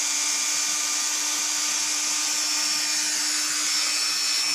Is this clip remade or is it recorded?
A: recorded